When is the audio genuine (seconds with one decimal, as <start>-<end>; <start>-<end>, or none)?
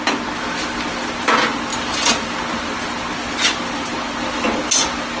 0.0-5.2